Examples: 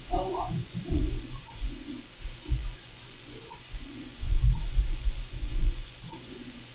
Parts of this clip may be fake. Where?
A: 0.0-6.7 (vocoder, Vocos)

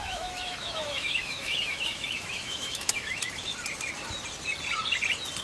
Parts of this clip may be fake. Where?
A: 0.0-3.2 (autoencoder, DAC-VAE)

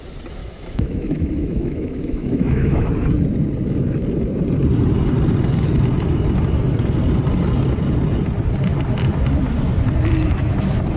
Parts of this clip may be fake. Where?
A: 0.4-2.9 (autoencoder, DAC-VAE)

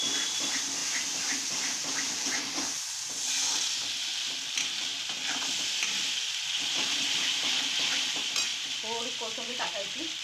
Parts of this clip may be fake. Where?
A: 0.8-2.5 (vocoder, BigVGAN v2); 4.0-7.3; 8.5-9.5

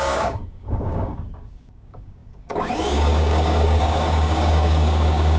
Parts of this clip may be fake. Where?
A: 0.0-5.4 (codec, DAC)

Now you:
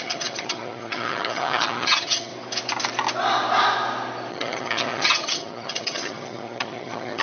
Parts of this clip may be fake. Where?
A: 0.0-2.3 (vocoder, HiFi-GAN); 4.3-7.2

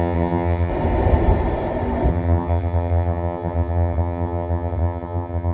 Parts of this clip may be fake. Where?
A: 0.0-0.7 (vocoder, HiFi-GAN); 2.1-5.5